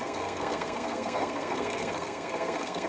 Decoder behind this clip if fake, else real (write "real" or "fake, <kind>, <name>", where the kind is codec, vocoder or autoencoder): fake, codec, SNAC